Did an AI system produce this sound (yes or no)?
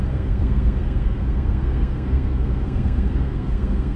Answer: yes